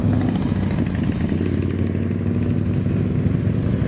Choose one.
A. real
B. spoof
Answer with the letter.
A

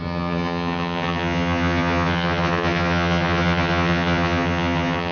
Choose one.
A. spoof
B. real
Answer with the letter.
A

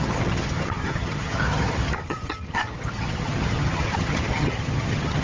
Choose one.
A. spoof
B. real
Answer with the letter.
A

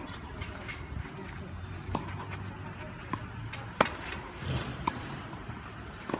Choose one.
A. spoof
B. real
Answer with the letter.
B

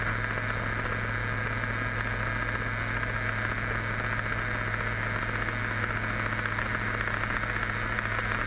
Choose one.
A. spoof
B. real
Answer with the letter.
B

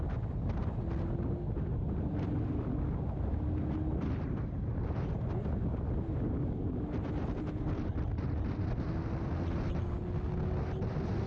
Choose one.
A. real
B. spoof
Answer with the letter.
A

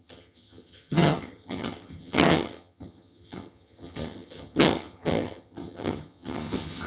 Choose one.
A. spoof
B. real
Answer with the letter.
A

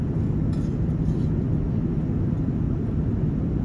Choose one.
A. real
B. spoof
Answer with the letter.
A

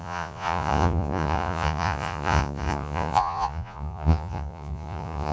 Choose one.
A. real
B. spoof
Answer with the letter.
B